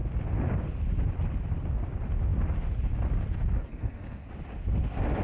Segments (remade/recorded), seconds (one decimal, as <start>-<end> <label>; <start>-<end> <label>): 0.0-3.6 recorded; 3.6-4.3 remade; 4.3-5.2 recorded